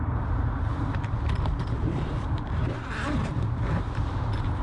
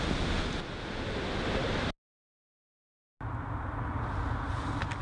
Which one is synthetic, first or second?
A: first